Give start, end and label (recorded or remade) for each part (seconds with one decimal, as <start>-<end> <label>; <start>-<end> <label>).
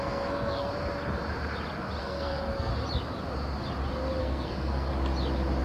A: 0.0-0.7 remade; 0.7-2.0 recorded; 2.0-2.7 remade; 2.7-4.2 recorded; 4.2-4.9 remade; 4.9-5.6 recorded